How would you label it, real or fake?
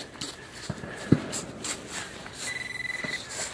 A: real